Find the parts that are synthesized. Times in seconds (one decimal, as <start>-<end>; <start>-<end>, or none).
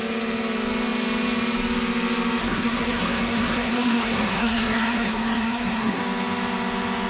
2.4-6.0